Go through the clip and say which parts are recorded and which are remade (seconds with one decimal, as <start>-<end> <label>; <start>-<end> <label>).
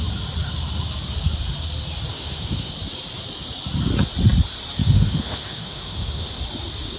0.0-2.1 recorded; 2.1-2.7 remade; 2.7-4.8 recorded; 4.8-6.4 remade; 6.4-7.0 recorded